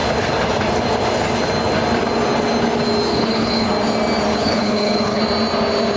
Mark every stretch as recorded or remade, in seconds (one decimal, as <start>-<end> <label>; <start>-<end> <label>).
0.0-3.1 recorded; 3.1-3.7 remade; 3.7-4.3 recorded; 4.3-5.2 remade; 5.2-6.0 recorded